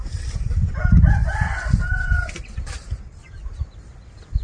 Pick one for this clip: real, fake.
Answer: real